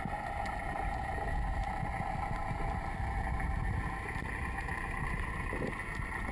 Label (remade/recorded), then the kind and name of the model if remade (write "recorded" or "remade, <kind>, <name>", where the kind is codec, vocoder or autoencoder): recorded